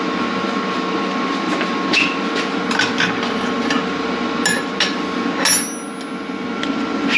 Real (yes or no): yes